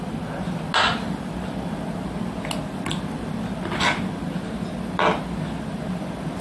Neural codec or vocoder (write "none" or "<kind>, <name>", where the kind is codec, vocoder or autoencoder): none